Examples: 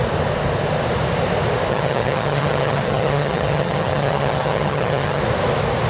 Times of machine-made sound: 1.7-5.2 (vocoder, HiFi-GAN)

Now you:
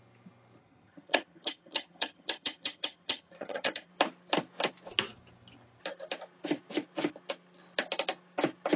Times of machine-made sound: 0.6-3.9 (vocoder, HiFi-GAN)

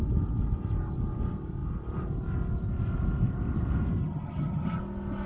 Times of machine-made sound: 4.0-4.8 (vocoder, HiFi-GAN)